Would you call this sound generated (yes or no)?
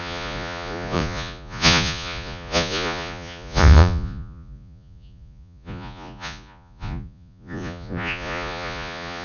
yes